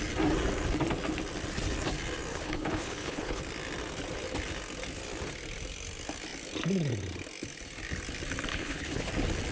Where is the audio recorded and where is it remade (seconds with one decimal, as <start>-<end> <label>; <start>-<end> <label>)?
0.0-2.3 recorded; 2.3-3.4 remade; 3.4-8.5 recorded; 8.5-9.1 remade; 9.1-9.5 recorded

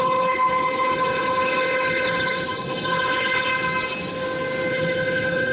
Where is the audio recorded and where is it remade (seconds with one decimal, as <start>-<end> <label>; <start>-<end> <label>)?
0.0-3.5 remade; 3.5-4.7 recorded; 4.7-5.5 remade

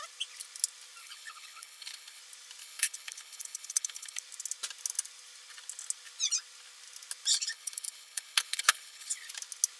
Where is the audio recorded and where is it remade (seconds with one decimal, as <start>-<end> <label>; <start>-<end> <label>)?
0.0-1.0 recorded; 1.0-2.2 remade; 2.2-2.6 recorded; 2.6-4.2 remade; 4.2-7.3 recorded; 7.3-9.3 remade; 9.3-9.8 recorded

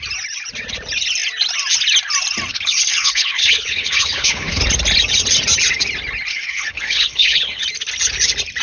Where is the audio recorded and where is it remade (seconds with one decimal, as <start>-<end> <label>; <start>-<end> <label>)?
0.0-2.5 recorded; 2.5-4.6 remade; 4.6-6.3 recorded; 6.3-7.6 remade; 7.6-8.6 recorded

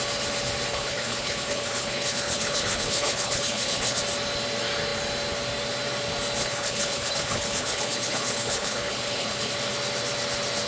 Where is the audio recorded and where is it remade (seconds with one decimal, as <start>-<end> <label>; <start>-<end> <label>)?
0.0-0.7 recorded; 0.7-4.0 remade; 4.0-6.4 recorded; 6.4-9.5 remade; 9.5-10.7 recorded

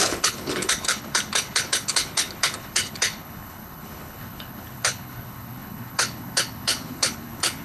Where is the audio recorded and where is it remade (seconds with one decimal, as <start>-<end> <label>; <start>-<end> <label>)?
0.0-7.6 remade